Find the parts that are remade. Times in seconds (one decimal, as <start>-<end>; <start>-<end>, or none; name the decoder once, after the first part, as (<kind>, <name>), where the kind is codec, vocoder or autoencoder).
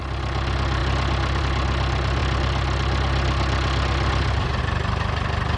none